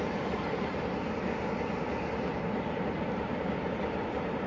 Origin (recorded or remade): remade